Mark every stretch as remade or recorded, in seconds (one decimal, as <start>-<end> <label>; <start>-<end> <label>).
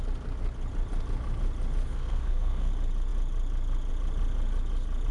0.0-1.9 recorded; 1.9-2.7 remade; 2.7-5.1 recorded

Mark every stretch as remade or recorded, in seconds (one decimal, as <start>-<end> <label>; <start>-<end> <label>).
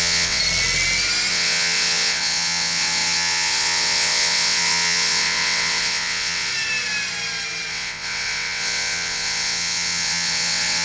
0.0-0.4 remade; 0.4-1.3 recorded; 1.3-6.5 remade; 6.5-7.7 recorded; 7.7-10.8 remade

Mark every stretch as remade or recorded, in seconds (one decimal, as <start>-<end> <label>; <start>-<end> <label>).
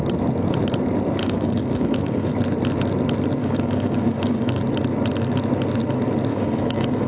0.0-1.2 recorded; 1.2-2.3 remade; 2.3-3.4 recorded; 3.4-4.6 remade; 4.6-6.3 recorded; 6.3-7.1 remade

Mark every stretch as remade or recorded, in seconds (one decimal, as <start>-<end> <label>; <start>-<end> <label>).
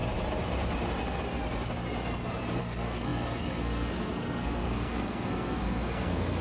0.0-2.6 recorded; 2.6-6.4 remade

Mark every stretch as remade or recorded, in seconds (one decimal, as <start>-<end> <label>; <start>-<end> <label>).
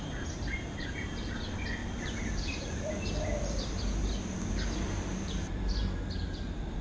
0.0-1.8 recorded; 1.8-2.9 remade; 2.9-3.4 recorded; 3.4-4.3 remade; 4.3-5.1 recorded; 5.1-5.8 remade; 5.8-6.8 recorded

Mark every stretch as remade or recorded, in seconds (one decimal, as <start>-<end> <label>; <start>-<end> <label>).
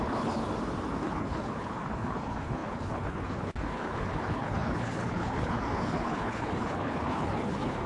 0.0-0.4 remade; 0.4-1.0 recorded; 1.0-7.9 remade